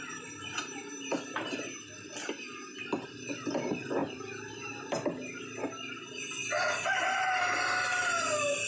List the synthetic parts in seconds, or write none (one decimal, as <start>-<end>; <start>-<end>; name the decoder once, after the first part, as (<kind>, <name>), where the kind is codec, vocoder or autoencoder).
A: 4.0-4.8 (vocoder, BigVGAN v2); 6.4-7.4